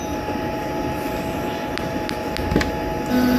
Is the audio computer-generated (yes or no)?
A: no